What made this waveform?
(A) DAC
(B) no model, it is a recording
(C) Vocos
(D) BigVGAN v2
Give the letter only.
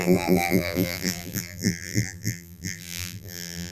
D